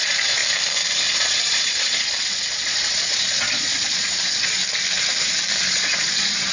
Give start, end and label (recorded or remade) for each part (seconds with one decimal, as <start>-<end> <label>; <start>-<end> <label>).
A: 0.0-0.4 remade; 0.4-1.0 recorded; 1.0-4.6 remade; 4.6-5.7 recorded; 5.7-6.5 remade